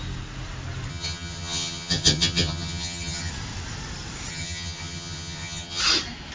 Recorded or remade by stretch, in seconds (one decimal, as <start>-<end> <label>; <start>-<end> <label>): 0.0-0.9 recorded; 0.9-3.3 remade; 3.3-4.3 recorded; 4.3-5.8 remade; 5.8-6.3 recorded